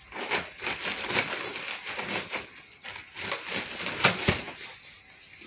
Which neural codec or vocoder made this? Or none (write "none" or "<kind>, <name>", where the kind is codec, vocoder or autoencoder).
none